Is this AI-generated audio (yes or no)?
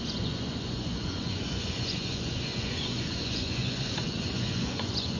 yes